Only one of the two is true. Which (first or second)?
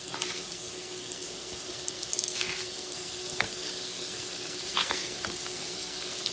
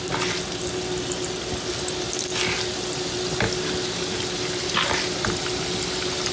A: second